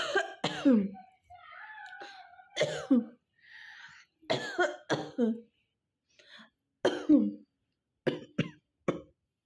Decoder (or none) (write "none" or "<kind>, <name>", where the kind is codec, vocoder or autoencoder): none